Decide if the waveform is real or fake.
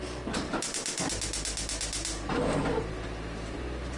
real